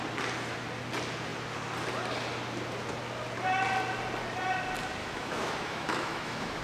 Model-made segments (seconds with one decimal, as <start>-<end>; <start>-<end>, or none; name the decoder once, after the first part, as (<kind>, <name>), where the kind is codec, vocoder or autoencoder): 5.0-6.6 (autoencoder, DAC-VAE)

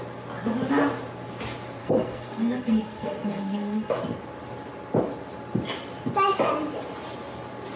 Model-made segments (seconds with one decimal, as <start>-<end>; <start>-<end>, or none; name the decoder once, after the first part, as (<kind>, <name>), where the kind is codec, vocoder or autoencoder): 1.8-3.9 (codec, SNAC)

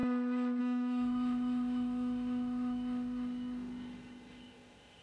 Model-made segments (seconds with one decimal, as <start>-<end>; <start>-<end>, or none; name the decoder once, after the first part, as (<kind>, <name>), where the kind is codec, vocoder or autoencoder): 0.6-5.0 (autoencoder, DAC-VAE)

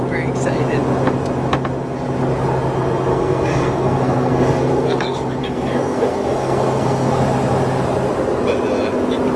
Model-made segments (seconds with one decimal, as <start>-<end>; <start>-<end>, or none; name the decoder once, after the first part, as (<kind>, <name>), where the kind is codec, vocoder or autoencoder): 3.1-7.2 (codec, SNAC)

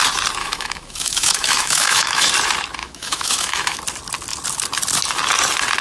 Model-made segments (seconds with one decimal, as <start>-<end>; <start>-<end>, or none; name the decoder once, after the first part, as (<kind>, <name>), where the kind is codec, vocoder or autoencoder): 0.4-2.3 (autoencoder, DAC-VAE); 2.8-3.8